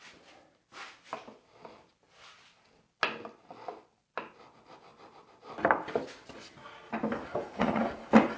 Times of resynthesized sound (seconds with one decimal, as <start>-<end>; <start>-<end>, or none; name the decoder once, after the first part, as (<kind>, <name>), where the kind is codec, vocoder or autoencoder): 7.3-7.9 (vocoder, Vocos)

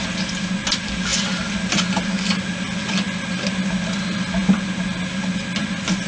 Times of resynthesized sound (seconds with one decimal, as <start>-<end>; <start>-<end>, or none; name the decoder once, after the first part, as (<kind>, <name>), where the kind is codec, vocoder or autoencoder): none

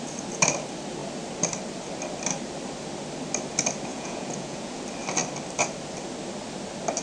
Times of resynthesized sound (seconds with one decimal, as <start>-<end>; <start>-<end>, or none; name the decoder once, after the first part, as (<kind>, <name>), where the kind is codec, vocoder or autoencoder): 3.9-4.8 (vocoder, Vocos)

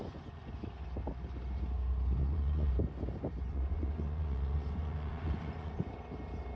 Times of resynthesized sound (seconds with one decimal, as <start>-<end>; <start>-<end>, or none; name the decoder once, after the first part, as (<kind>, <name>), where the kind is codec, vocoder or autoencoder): 0.0-0.5 (vocoder, Vocos); 2.2-2.7; 3.5-5.9